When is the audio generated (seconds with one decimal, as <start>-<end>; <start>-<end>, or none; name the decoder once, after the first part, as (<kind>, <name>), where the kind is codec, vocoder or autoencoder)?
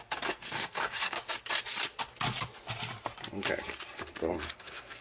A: 0.0-1.2 (codec, SNAC); 4.2-5.0